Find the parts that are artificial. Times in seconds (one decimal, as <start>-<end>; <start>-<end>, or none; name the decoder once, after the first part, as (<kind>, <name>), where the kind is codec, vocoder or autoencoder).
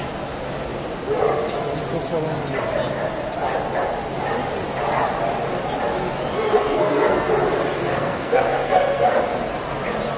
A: 6.5-7.3 (codec, SNAC); 7.9-9.2